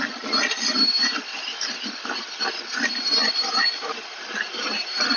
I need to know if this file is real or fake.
real